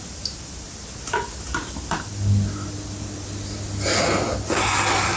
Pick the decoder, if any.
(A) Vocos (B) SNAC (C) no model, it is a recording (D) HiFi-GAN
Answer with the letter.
C